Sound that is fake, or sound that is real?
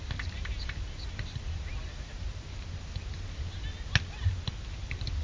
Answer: real